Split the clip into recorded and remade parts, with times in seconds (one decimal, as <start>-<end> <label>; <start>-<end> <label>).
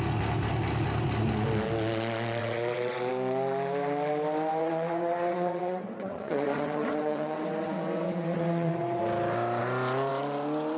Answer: 0.0-2.4 recorded; 2.4-3.1 remade; 3.1-4.6 recorded; 4.6-9.0 remade; 9.0-10.8 recorded